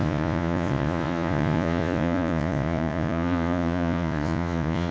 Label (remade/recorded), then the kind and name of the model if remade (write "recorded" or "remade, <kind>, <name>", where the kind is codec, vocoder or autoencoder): remade, vocoder, Vocos